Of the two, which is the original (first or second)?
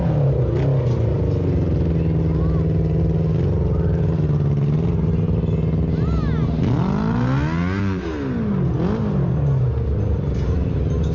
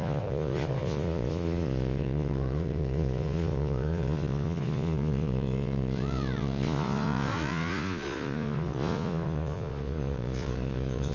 first